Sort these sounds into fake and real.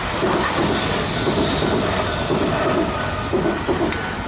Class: real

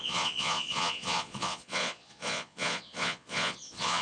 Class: fake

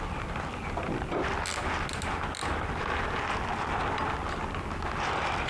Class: real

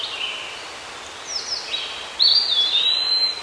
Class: real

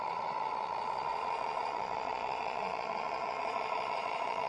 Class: fake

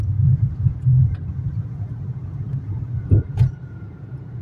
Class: fake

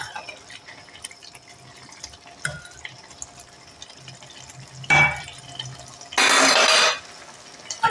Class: real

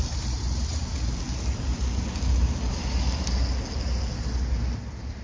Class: real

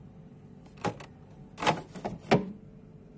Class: real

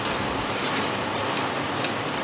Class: real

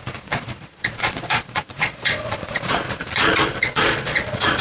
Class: fake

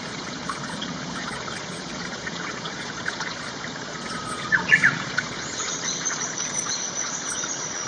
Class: fake